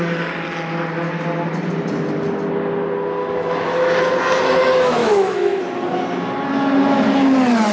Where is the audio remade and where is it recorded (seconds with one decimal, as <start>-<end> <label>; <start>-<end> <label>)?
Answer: 0.0-3.2 recorded; 3.2-4.0 remade; 4.0-5.0 recorded; 5.0-5.6 remade; 5.6-7.7 recorded